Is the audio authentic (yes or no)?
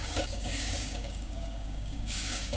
no